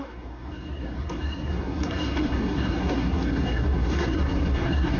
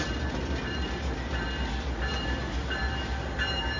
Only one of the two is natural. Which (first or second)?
second